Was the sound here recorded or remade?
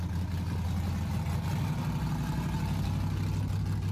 recorded